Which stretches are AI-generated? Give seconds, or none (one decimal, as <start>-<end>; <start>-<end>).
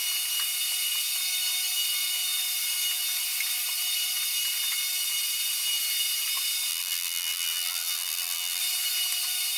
6.7-8.6